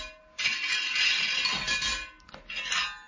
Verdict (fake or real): real